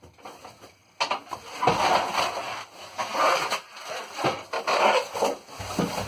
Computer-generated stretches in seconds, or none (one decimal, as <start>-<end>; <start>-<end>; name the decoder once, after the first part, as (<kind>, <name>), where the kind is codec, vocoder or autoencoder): none